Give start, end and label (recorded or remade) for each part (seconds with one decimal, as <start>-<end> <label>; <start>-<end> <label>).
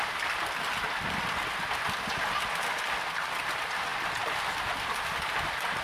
0.0-5.8 recorded